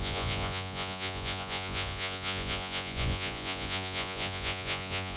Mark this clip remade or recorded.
remade